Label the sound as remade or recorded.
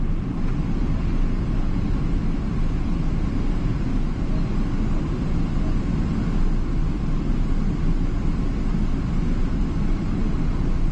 recorded